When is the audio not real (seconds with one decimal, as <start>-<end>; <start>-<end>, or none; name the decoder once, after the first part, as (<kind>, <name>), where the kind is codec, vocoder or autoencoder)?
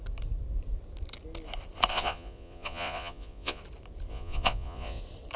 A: 1.9-3.6 (vocoder, Vocos); 4.1-5.0